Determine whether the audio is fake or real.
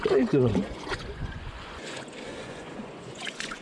fake